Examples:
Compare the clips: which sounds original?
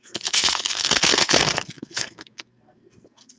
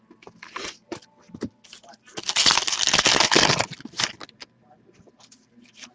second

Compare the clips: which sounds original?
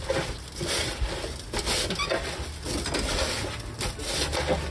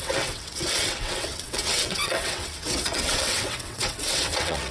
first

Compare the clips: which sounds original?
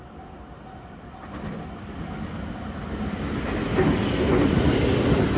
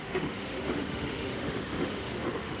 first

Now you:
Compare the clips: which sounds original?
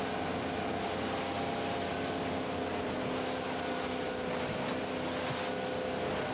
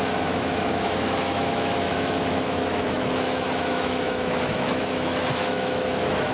first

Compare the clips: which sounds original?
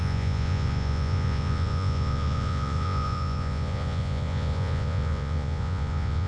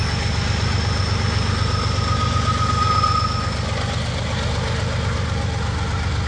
second